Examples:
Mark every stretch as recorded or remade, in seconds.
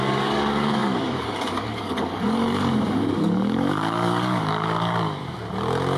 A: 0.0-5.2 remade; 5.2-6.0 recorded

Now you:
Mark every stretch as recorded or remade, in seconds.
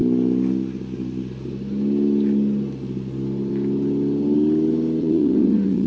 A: 0.0-5.0 recorded; 5.0-5.9 remade